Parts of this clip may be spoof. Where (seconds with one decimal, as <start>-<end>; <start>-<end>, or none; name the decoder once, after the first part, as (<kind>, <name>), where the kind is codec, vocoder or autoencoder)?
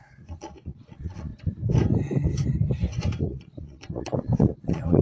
0.0-1.3 (vocoder, Vocos); 3.2-5.0